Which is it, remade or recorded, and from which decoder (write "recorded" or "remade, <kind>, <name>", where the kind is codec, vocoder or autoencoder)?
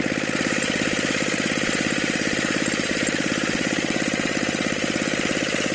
recorded